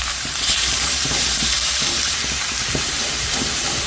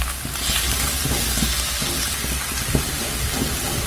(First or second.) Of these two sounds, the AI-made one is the first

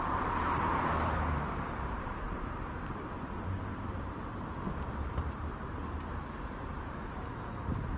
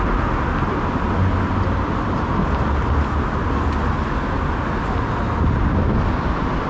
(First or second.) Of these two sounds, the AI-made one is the first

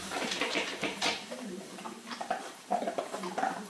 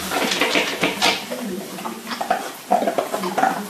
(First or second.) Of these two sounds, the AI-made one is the first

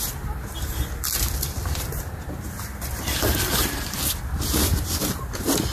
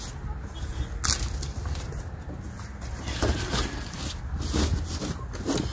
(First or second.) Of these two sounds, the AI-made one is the first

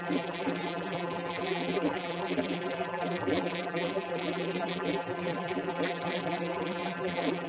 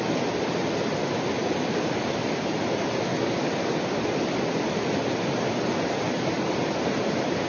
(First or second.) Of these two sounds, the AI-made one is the first